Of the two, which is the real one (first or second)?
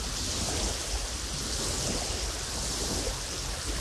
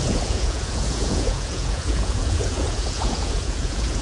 first